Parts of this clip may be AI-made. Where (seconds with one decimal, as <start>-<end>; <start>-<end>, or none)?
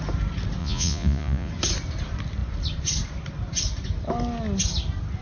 0.6-1.5